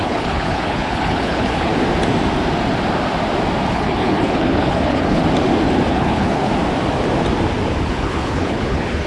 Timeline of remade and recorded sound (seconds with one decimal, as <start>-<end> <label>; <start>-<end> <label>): 0.0-1.7 remade; 1.7-3.7 recorded; 3.7-5.2 remade; 5.2-5.9 recorded; 5.9-6.5 remade; 6.5-7.8 recorded; 7.8-9.1 remade